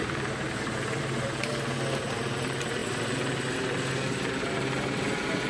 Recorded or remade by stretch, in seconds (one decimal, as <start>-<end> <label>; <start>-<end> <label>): 0.0-1.5 remade; 1.5-5.5 recorded